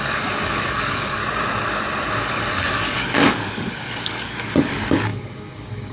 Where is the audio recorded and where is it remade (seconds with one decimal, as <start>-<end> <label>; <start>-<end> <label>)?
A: 0.0-1.2 remade; 1.2-2.2 recorded; 2.2-5.9 remade